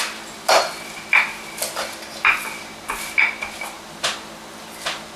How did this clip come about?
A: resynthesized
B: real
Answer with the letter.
B